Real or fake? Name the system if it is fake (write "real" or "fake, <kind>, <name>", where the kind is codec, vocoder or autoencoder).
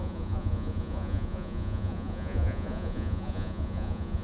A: fake, vocoder, Vocos